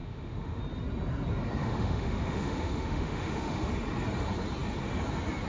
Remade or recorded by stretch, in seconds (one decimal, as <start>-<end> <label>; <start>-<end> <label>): 0.0-0.6 remade; 0.6-1.6 recorded; 1.6-3.7 remade; 3.7-5.5 recorded